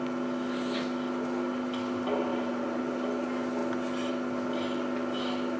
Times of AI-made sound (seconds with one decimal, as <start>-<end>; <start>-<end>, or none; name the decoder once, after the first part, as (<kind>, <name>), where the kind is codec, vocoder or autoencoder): 2.3-2.8 (vocoder, BigVGAN v2)